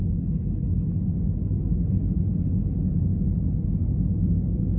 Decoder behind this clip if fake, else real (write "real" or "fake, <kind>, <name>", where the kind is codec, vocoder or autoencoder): real